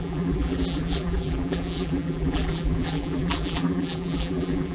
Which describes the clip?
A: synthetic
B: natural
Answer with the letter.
A